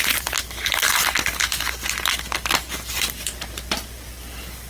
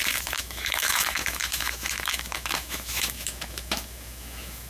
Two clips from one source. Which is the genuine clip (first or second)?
first